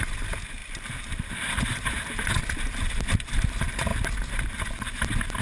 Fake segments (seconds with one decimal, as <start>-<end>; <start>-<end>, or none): 0.6-2.4